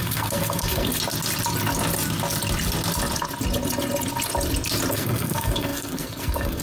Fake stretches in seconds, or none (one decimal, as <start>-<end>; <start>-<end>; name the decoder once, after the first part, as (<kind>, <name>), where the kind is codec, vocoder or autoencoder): 0.0-0.9 (codec, SNAC); 4.9-6.6